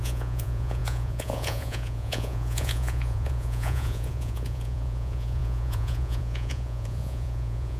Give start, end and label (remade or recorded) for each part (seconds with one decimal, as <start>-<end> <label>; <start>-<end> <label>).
0.0-7.8 remade